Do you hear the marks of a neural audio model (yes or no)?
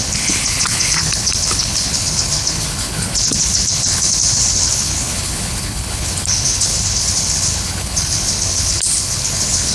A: yes